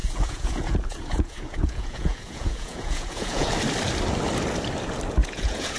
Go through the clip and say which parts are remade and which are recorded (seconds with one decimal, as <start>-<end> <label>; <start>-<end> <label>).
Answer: 0.0-3.5 remade; 3.5-5.2 recorded; 5.2-5.8 remade